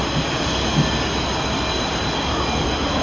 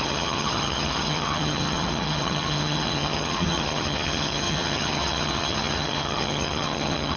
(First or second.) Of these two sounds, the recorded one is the first